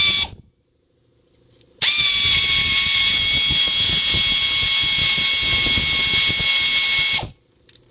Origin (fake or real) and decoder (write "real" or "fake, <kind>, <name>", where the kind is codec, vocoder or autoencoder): real